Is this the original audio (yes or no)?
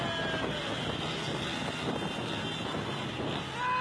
yes